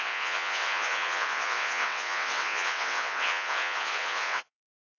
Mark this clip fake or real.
fake